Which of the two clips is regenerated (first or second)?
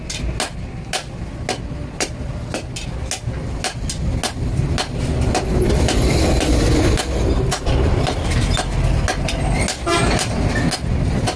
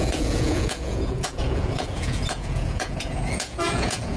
second